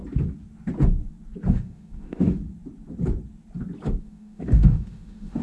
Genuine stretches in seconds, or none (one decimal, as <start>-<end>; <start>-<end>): 0.0-1.5; 2.4-4.0

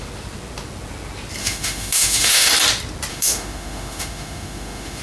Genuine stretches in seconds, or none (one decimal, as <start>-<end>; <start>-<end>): 0.0-1.4; 2.5-3.1

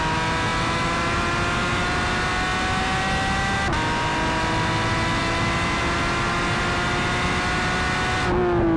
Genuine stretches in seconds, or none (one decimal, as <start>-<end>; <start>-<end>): 0.0-8.8

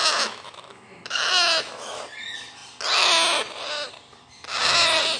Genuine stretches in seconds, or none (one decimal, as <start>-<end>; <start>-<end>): 2.0-5.2

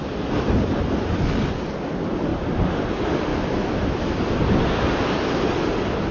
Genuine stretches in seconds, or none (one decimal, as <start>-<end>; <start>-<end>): 0.0-3.3; 4.1-6.1

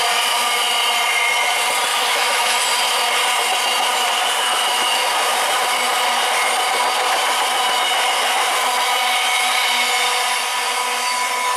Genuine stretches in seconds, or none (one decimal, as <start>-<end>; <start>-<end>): 0.0-1.9; 2.6-11.6

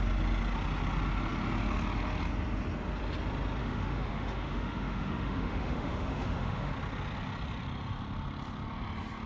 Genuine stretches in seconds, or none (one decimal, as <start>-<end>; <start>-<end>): 0.0-3.6; 6.7-9.3

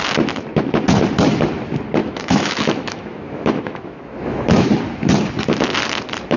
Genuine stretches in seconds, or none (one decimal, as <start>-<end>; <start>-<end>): 0.0-2.0; 4.7-6.4